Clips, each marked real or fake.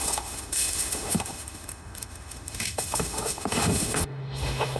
fake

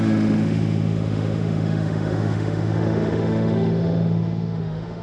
fake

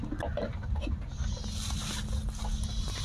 real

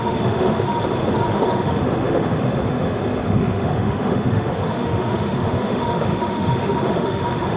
fake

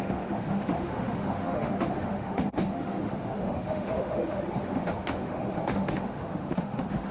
fake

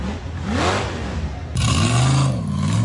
real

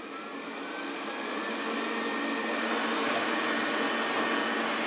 real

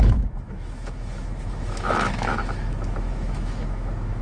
fake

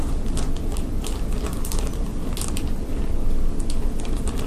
real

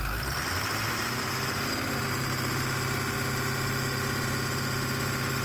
real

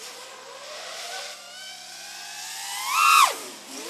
real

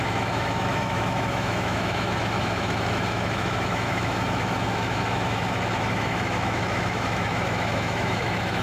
fake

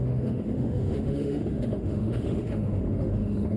fake